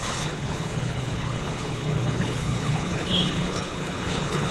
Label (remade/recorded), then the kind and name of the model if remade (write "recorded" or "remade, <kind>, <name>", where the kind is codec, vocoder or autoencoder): remade, codec, HILCodec